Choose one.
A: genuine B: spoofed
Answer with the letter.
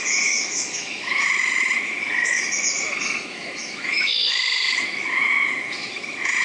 B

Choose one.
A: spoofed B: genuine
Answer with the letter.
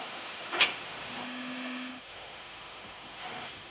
A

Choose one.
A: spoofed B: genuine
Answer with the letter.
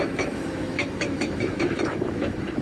A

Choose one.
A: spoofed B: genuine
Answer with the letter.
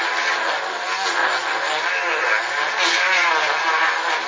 B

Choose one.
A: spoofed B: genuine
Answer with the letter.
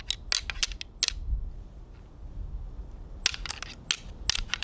B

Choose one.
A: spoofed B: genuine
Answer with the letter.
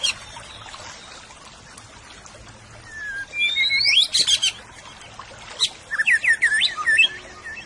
B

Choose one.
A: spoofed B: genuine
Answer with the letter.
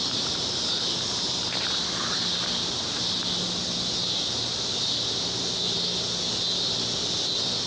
B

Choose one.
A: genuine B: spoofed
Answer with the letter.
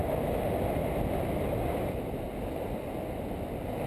A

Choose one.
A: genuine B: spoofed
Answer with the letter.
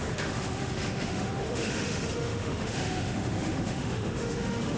B